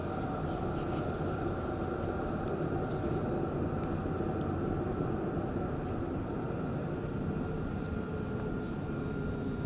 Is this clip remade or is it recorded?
recorded